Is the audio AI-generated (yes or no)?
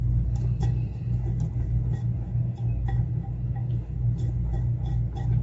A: no